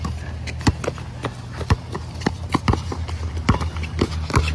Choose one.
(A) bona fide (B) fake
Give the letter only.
A